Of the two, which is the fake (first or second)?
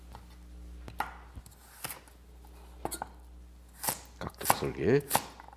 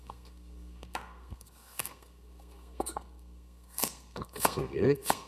second